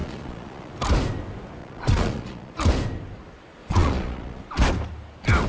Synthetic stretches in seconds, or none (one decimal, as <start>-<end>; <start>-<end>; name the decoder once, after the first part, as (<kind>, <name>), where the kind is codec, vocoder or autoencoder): 0.0-0.7 (vocoder, Vocos); 1.6-2.6; 3.6-4.4